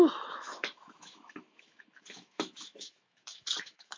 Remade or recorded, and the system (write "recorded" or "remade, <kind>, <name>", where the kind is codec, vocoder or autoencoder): remade, autoencoder, DAC-VAE